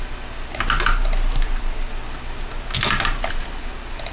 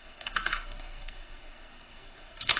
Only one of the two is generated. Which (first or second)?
second